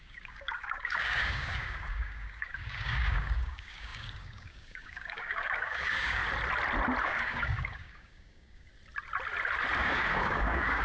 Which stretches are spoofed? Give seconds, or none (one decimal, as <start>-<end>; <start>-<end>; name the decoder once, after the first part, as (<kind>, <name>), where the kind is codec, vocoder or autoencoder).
0.0-6.2 (codec, DAC); 7.0-8.7; 9.8-10.8